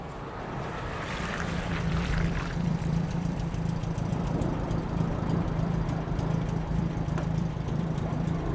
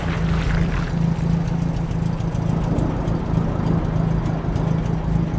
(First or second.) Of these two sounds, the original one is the second